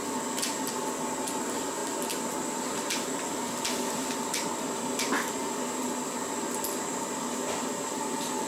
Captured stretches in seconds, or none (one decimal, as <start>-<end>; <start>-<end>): 0.0-8.5